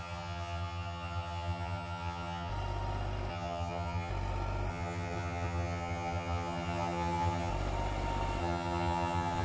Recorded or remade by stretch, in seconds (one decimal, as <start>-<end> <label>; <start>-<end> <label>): 0.0-2.5 remade; 2.5-3.3 recorded; 3.3-4.1 remade; 4.1-4.7 recorded; 4.7-7.5 remade; 7.5-8.4 recorded; 8.4-9.4 remade